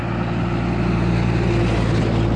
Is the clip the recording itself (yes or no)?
yes